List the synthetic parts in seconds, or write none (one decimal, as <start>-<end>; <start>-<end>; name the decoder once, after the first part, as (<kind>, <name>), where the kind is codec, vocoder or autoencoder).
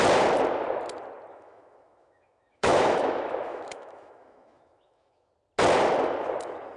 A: 1.3-5.3 (autoencoder, DAC-VAE)